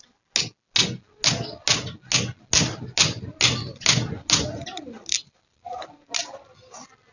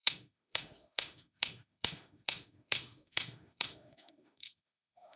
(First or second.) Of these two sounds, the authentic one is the first